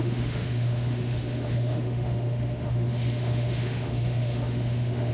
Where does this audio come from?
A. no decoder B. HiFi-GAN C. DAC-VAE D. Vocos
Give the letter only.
C